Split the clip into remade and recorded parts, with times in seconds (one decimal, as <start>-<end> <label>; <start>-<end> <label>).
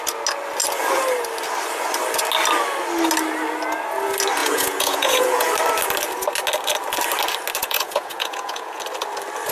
0.0-4.4 recorded; 4.4-5.5 remade; 5.5-7.6 recorded; 7.6-8.8 remade; 8.8-9.5 recorded